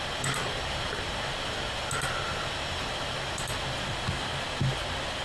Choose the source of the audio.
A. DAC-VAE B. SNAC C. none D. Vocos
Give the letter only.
C